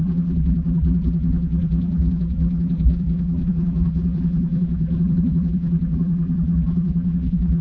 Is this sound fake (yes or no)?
yes